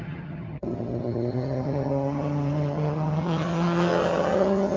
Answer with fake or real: fake